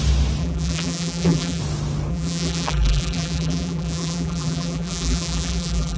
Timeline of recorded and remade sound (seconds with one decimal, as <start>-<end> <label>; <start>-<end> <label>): 0.0-0.4 recorded; 0.4-1.6 remade; 1.6-2.1 recorded; 2.1-6.0 remade